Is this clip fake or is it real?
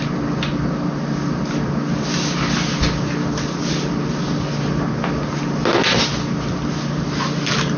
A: real